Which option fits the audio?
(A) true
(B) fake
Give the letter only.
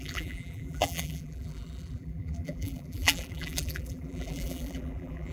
B